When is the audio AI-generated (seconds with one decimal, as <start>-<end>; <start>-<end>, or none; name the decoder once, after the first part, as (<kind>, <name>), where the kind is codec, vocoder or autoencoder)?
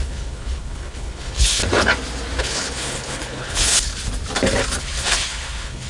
0.0-1.6 (codec, HILCodec); 2.4-3.9; 4.8-5.9